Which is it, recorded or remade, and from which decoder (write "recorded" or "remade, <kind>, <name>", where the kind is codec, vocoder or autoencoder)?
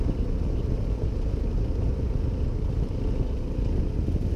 recorded